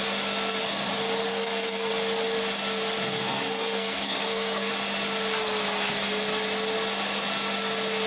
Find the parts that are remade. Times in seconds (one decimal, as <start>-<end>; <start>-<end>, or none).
1.3-1.9; 3.1-4.7